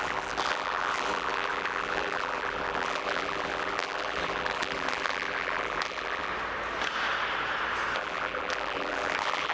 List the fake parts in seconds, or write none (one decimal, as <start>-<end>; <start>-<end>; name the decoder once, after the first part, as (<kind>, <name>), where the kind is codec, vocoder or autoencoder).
0.0-6.3 (vocoder, BigVGAN v2); 8.0-9.5